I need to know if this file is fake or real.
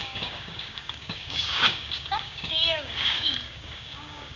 fake